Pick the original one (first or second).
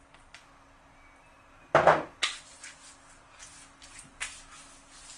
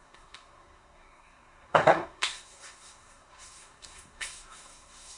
first